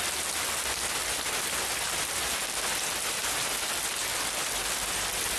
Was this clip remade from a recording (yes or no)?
no